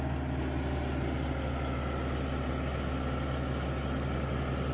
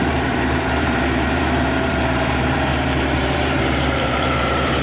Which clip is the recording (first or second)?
first